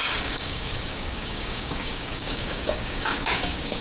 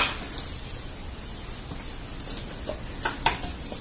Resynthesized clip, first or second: first